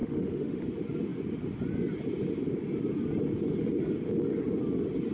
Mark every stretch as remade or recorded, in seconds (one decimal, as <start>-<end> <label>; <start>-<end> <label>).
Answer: 0.0-0.6 remade; 0.6-5.1 recorded